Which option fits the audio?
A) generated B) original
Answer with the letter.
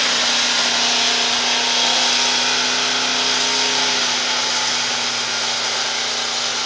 B